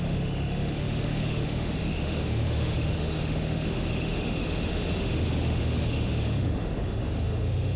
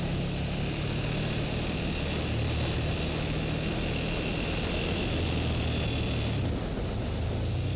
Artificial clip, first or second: first